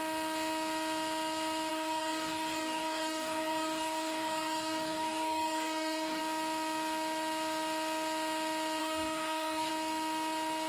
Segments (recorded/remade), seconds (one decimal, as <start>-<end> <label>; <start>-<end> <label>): 0.0-1.7 recorded; 1.7-6.2 remade; 6.2-8.8 recorded; 8.8-9.7 remade; 9.7-10.7 recorded